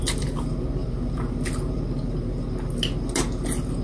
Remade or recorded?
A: recorded